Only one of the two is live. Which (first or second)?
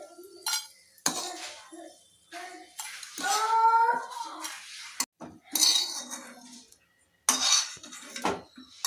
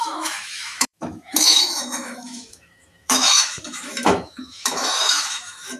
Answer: first